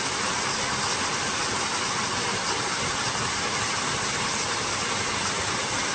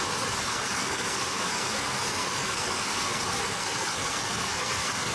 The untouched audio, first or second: first